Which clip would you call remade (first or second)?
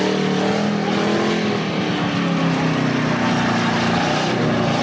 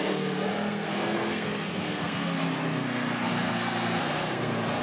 second